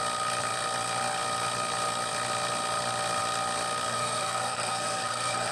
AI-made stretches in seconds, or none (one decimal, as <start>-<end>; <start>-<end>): 3.9-5.5